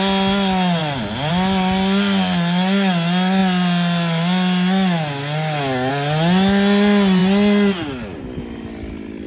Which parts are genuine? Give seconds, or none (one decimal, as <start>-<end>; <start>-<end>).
0.0-9.3